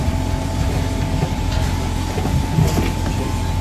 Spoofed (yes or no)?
yes